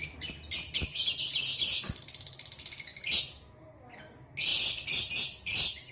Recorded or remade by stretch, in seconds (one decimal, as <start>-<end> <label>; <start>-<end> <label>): 0.0-5.9 recorded